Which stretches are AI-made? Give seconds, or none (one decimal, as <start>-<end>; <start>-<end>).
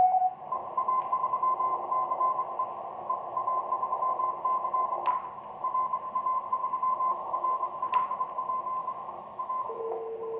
7.1-7.9; 8.8-9.8